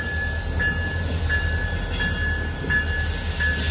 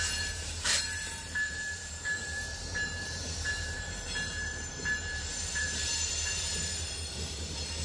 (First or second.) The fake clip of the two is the second